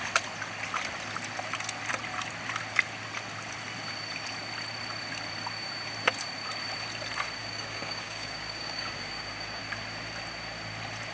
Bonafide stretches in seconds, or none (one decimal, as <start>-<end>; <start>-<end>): 0.0-7.4; 9.6-11.1